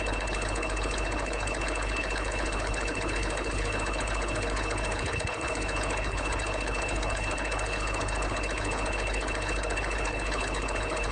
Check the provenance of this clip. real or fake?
fake